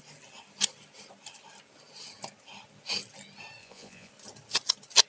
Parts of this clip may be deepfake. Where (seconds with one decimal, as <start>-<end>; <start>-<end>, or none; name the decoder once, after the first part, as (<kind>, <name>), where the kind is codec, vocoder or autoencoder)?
3.6-4.1 (vocoder, Vocos)